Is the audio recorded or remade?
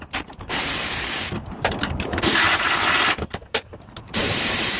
remade